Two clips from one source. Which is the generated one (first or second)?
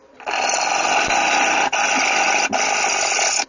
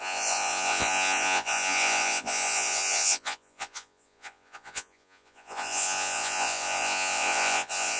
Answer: second